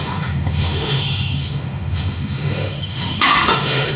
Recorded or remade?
remade